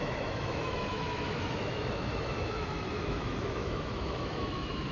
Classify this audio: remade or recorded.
remade